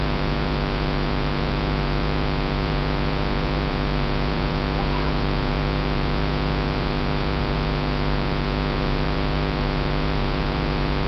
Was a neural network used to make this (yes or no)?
yes